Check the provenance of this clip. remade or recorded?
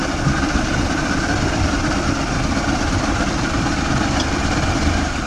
remade